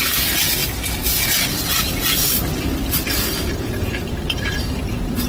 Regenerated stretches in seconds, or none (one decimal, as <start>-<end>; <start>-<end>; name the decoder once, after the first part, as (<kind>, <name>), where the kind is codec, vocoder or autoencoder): none